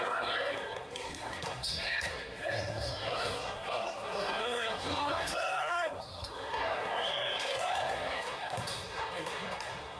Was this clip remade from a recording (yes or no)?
yes